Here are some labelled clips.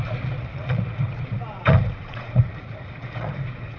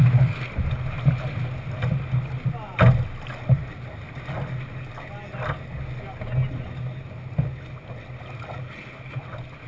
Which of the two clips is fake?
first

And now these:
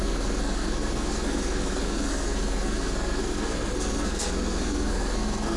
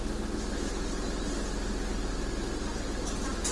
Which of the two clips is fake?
first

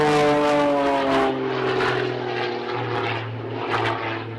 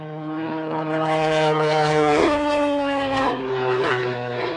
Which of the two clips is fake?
second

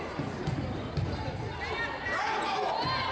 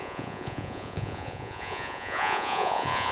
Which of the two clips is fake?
second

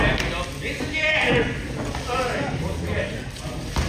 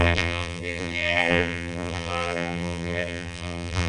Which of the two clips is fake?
second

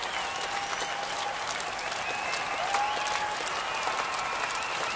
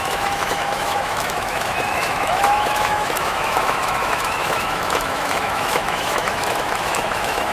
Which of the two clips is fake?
second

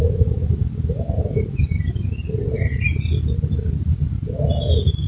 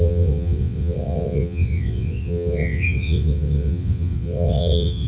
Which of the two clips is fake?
second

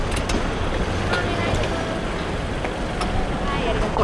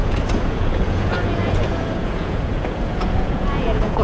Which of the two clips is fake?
second